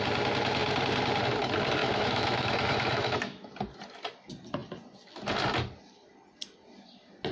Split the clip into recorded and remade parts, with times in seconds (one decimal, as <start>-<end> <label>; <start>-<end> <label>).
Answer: 0.0-1.8 recorded; 1.8-3.5 remade; 3.5-7.3 recorded